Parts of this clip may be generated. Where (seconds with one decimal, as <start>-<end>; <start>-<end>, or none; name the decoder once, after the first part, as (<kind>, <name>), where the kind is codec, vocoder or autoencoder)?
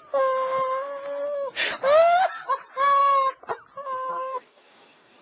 4.1-5.2 (codec, DAC)